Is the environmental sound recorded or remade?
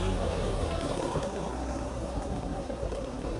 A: remade